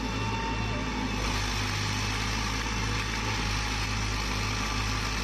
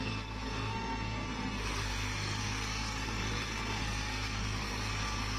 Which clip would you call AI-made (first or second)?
second